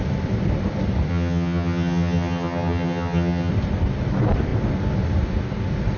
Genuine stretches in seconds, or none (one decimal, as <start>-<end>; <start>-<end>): 0.0-1.1; 3.5-6.0